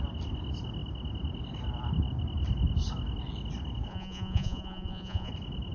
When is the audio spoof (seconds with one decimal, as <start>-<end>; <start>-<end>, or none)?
3.9-5.3